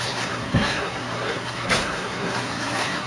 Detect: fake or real fake